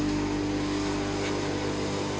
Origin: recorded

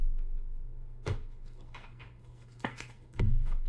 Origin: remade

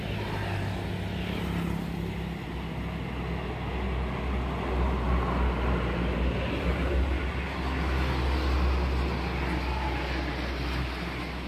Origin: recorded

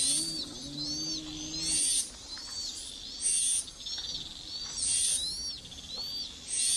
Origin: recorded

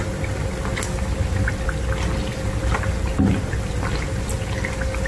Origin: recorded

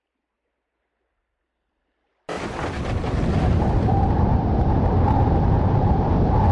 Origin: recorded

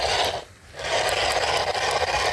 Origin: recorded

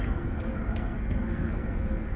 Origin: remade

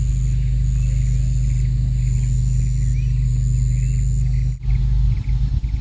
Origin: recorded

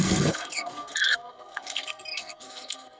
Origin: remade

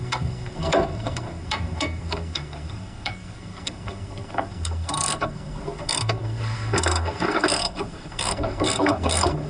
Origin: remade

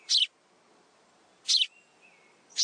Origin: recorded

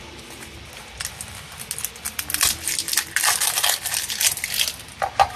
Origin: recorded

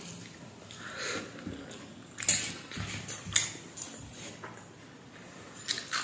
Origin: recorded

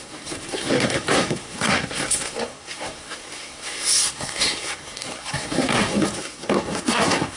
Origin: remade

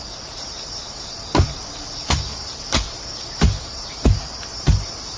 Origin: recorded